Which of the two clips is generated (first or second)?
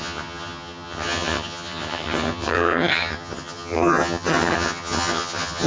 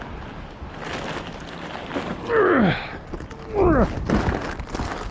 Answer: first